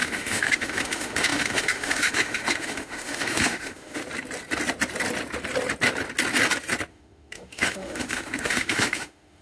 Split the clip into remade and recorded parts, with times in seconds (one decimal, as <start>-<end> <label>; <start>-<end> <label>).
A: 0.0-4.0 remade; 4.0-6.9 recorded; 6.9-9.4 remade